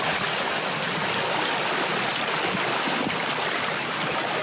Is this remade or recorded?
recorded